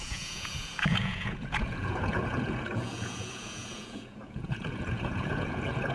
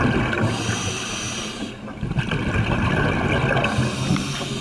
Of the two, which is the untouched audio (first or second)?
second